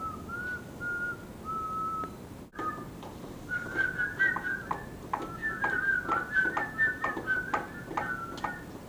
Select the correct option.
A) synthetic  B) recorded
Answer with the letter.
B